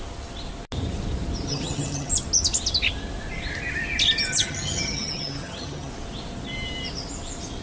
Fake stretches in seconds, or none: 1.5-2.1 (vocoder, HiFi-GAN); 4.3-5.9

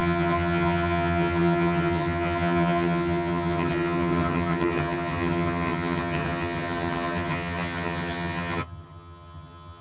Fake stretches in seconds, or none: 0.0-9.8 (vocoder, HiFi-GAN)

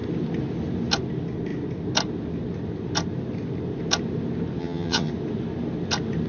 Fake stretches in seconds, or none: 4.6-5.1 (vocoder, HiFi-GAN)

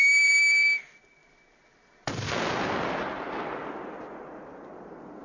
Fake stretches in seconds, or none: none